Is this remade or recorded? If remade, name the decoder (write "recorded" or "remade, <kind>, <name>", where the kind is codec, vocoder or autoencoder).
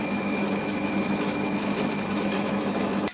remade, autoencoder, DAC-VAE